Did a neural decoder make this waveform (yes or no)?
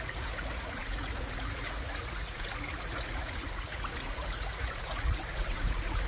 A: yes